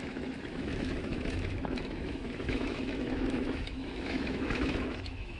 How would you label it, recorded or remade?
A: remade